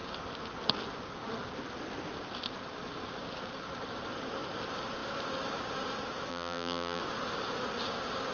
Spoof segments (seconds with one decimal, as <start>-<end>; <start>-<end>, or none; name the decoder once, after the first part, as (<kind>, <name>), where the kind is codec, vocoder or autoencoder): 6.3-7.0 (vocoder, BigVGAN v2)